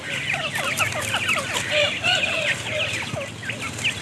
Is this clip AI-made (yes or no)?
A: no